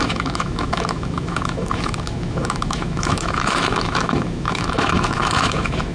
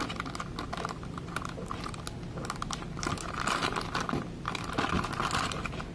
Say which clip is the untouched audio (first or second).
second